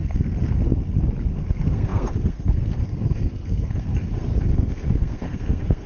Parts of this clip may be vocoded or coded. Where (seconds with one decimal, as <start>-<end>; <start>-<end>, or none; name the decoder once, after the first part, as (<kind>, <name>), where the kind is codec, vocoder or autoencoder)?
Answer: 0.0-0.7 (codec, SNAC); 1.3-5.9